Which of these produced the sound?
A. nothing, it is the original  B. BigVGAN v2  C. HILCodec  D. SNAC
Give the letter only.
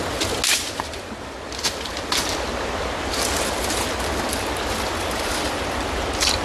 A